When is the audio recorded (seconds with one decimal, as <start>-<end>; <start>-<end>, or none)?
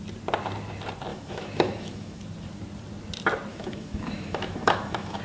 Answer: 0.0-1.1; 2.2-3.5